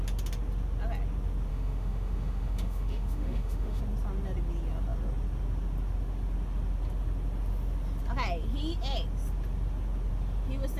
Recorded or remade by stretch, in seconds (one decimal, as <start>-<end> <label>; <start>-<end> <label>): 0.0-1.5 recorded; 1.5-3.8 remade; 3.8-10.8 recorded